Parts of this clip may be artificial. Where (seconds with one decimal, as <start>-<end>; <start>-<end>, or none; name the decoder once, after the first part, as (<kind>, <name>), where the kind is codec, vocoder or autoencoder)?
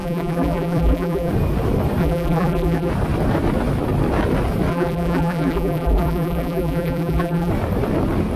0.0-1.3 (vocoder, BigVGAN v2); 2.0-2.9; 4.7-7.5